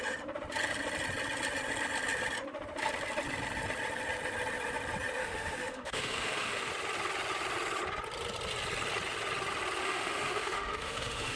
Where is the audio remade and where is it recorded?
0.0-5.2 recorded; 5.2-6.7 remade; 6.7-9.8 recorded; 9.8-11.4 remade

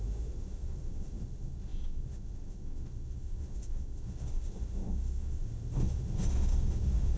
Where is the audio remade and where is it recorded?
0.0-7.2 remade

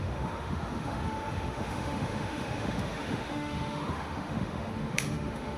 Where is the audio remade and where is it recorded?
0.0-5.6 remade

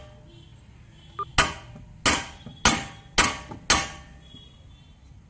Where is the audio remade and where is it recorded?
0.0-5.3 recorded

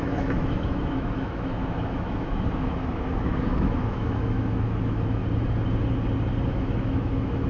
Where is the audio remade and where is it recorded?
0.0-5.2 remade; 5.2-6.5 recorded; 6.5-7.5 remade